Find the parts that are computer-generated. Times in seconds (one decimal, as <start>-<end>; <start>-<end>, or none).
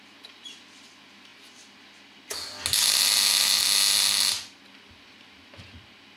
none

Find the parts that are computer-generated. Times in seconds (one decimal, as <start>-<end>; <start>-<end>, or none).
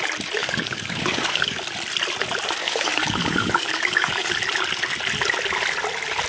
0.4-1.6; 2.6-4.3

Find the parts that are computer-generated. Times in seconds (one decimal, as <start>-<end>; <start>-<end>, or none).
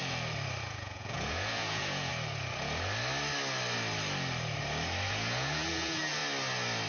0.6-2.1; 5.1-6.2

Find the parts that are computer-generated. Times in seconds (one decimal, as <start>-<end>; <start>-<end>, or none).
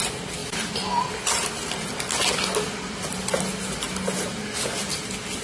none